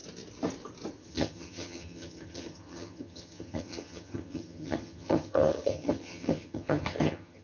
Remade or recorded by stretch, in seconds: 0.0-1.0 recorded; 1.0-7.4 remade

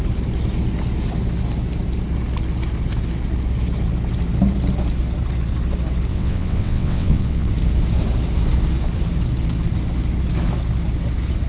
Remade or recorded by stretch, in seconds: 0.0-6.1 recorded; 6.1-7.5 remade; 7.5-11.5 recorded

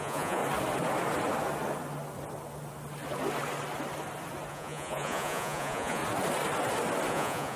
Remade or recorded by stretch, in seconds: 0.0-0.4 remade; 0.4-4.5 recorded; 4.5-6.0 remade; 6.0-7.1 recorded; 7.1-7.6 remade

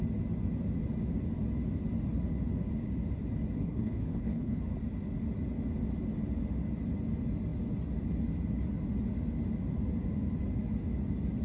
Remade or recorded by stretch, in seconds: 0.0-3.6 recorded; 3.6-4.6 remade; 4.6-11.4 recorded

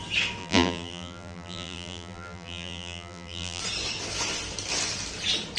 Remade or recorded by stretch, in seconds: 0.0-0.4 recorded; 0.4-3.6 remade; 3.6-5.6 recorded

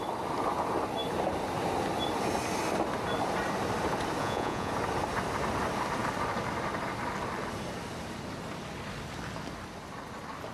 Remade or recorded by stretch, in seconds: 0.0-4.2 recorded; 4.2-4.7 remade; 4.7-10.5 recorded

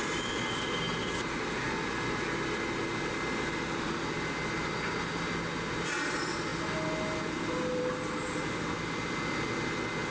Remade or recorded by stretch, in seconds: 0.0-10.1 recorded

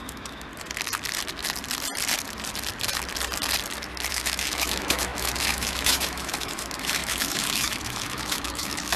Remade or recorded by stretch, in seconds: 0.0-0.5 remade; 0.5-4.1 recorded; 4.1-9.0 remade